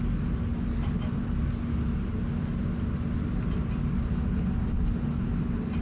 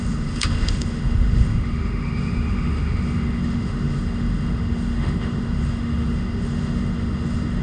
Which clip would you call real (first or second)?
first